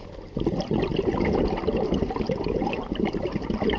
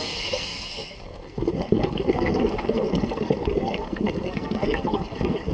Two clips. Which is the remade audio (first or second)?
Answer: second